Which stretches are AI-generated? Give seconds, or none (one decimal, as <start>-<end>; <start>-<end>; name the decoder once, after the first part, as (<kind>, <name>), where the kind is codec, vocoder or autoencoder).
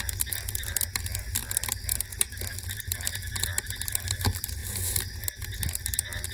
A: none